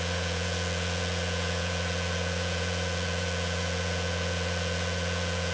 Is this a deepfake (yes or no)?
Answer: yes